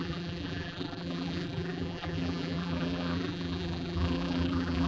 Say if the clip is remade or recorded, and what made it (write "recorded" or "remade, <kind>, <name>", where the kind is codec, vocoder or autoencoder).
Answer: remade, vocoder, BigVGAN v2